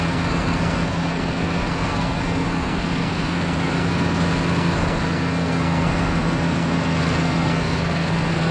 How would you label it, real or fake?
fake